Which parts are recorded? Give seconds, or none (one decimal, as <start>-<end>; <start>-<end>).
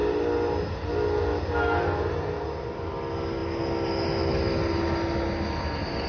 0.0-6.1